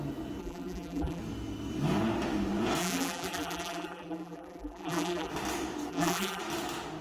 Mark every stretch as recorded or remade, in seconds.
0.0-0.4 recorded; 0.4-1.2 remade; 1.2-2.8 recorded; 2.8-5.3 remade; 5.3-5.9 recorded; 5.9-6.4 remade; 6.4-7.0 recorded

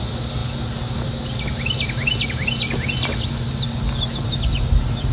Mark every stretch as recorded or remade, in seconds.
0.0-5.1 recorded

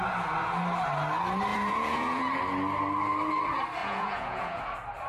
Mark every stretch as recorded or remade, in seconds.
0.0-1.5 recorded; 1.5-2.4 remade; 2.4-3.8 recorded; 3.8-4.6 remade; 4.6-5.1 recorded

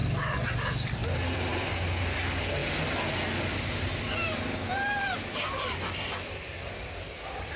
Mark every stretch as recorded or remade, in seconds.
0.0-1.2 recorded; 1.2-2.6 remade; 2.6-3.4 recorded; 3.4-7.6 remade

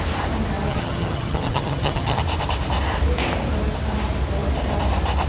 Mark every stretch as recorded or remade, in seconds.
0.0-0.7 recorded; 0.7-2.2 remade; 2.2-5.3 recorded

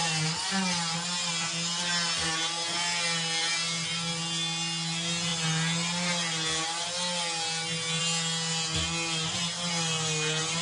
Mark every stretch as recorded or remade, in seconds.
0.0-10.6 recorded

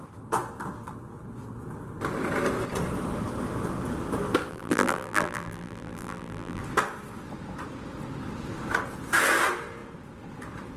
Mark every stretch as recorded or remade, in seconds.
0.0-4.5 recorded; 4.5-6.6 remade; 6.6-10.8 recorded